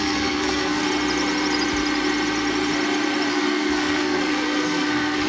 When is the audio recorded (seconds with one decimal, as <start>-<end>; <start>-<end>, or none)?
0.8-3.3